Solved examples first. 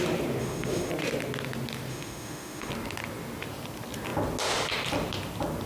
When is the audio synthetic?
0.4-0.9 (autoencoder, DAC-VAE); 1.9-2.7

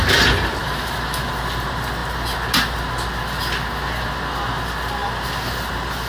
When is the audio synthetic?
0.6-1.3 (autoencoder, DAC-VAE)